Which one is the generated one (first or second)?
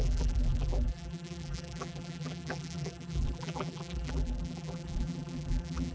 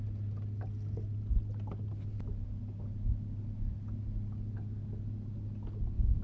first